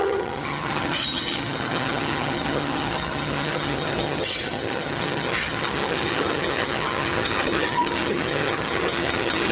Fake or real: fake